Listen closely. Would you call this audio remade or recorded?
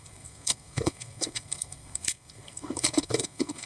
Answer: remade